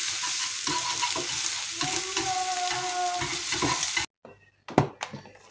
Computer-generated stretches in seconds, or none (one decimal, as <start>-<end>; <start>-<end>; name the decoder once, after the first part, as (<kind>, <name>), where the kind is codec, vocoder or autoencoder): none